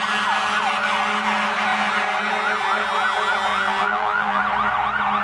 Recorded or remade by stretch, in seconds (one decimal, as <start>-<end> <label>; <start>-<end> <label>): 0.0-3.5 recorded; 3.5-4.4 remade; 4.4-5.2 recorded